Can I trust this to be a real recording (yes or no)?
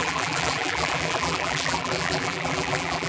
no